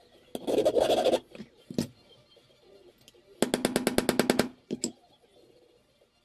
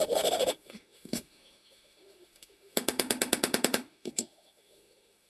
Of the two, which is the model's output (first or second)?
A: second